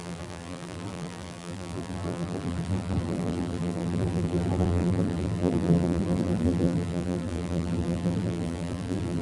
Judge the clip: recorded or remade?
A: remade